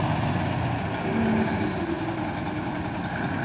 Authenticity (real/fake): real